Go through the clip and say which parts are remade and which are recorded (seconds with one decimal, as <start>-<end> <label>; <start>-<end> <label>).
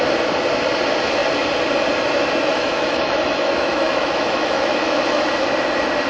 0.0-2.5 recorded; 2.5-5.3 remade; 5.3-6.1 recorded